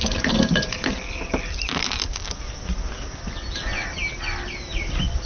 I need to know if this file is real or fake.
real